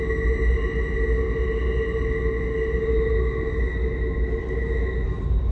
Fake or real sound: real